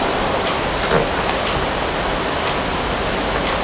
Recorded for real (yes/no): yes